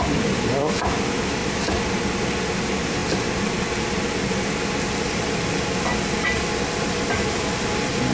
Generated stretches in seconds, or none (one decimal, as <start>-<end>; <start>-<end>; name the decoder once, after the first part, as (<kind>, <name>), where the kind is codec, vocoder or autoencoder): none